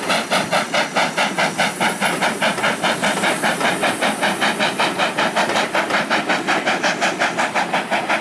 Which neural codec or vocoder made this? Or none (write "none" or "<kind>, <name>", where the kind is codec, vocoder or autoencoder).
none